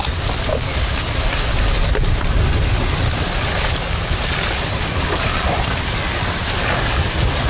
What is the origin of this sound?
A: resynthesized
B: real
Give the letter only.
B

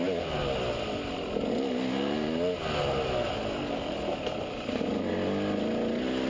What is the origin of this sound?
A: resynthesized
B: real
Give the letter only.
B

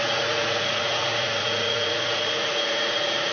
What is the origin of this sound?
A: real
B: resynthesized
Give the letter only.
B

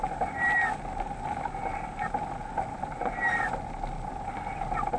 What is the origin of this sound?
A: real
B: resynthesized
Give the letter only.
A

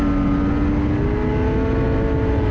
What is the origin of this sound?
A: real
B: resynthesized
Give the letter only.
A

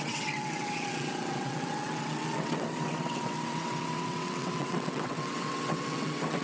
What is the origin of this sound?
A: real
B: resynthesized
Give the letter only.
B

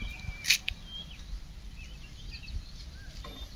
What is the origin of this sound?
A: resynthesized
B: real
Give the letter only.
B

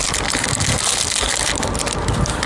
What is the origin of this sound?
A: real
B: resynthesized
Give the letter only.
A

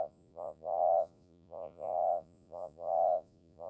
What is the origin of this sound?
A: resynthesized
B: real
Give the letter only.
A